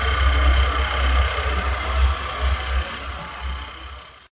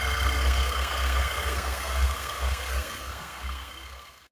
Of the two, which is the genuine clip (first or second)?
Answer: first